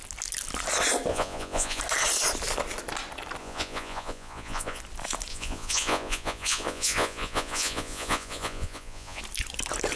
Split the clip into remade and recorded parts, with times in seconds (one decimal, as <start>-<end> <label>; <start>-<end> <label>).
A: 0.0-1.1 recorded; 1.1-1.8 remade; 1.8-3.4 recorded; 3.4-4.8 remade; 4.8-5.3 recorded; 5.3-9.2 remade; 9.2-10.0 recorded